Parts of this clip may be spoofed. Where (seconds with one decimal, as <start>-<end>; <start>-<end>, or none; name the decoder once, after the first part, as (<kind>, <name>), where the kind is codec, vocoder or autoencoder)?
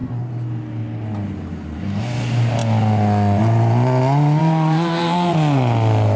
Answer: 4.4-5.3 (vocoder, BigVGAN v2)